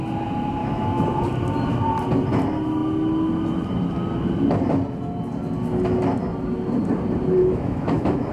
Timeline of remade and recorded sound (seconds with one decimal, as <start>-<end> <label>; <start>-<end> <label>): 0.0-0.6 recorded; 0.6-1.2 remade; 1.2-7.4 recorded; 7.4-8.3 remade